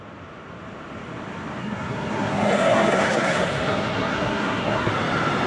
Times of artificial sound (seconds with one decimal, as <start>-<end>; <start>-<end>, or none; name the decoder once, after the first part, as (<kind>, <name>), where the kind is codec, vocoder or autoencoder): 1.6-4.9 (codec, SNAC)